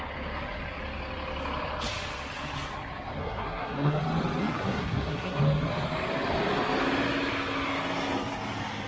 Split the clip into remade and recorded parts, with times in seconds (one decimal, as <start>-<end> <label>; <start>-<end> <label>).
0.0-3.2 recorded; 3.2-4.0 remade; 4.0-4.4 recorded; 4.4-5.4 remade; 5.4-8.9 recorded